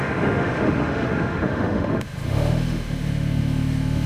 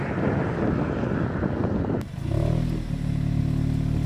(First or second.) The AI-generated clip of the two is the first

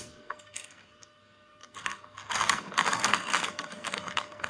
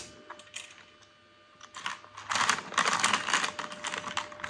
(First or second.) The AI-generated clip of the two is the first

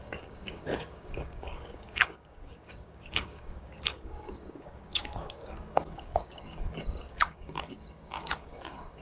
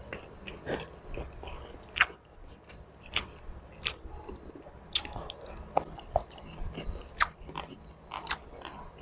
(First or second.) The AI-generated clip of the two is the first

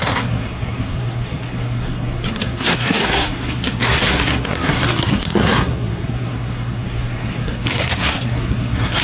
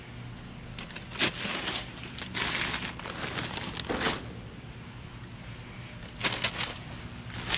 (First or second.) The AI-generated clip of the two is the first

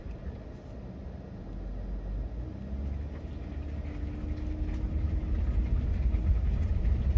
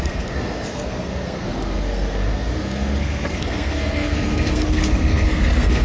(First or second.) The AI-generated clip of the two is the second